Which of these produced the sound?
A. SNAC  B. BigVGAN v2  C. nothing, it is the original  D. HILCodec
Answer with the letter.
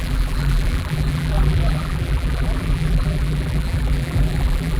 B